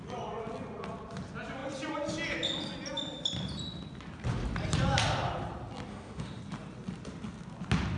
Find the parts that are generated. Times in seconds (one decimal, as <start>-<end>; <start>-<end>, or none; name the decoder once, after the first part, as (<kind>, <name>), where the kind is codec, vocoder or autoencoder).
5.9-6.4 (autoencoder, DAC-VAE)